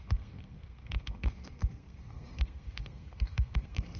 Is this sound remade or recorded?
remade